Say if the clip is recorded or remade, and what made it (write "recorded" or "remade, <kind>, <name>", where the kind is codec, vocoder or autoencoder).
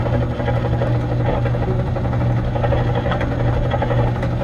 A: recorded